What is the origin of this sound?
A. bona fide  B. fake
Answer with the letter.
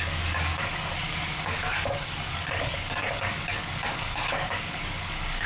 B